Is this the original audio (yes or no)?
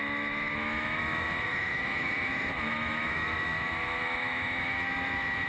no